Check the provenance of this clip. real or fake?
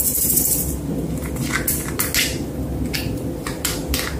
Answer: real